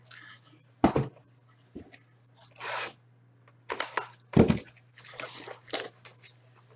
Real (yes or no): yes